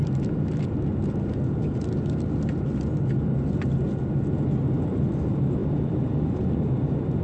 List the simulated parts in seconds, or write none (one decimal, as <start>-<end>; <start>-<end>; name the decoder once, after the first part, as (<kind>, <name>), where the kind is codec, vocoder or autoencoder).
5.6-6.7 (vocoder, BigVGAN v2)